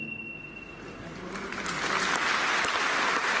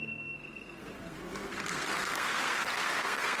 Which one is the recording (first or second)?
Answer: first